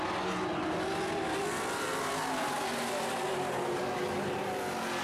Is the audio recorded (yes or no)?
yes